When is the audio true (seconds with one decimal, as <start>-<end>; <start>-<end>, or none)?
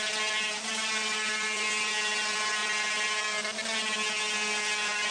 0.0-5.1